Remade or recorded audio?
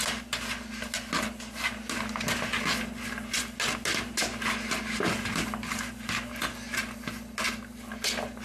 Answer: recorded